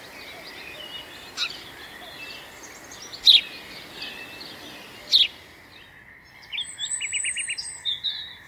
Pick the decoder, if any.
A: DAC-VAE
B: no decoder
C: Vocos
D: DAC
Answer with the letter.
B